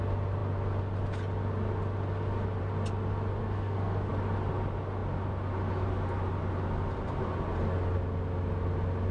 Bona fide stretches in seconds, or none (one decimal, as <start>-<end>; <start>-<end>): 0.0-3.4; 4.1-9.1